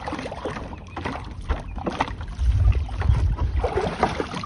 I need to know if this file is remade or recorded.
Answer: recorded